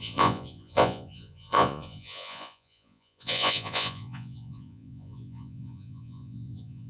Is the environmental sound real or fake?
fake